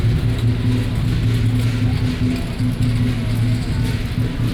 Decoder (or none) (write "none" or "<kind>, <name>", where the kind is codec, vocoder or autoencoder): none